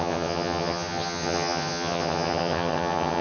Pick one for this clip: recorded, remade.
remade